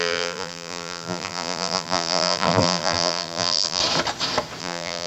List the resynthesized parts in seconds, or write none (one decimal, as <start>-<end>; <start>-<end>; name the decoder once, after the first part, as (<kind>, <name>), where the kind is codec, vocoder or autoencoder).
0.0-3.8 (vocoder, BigVGAN v2); 4.6-5.1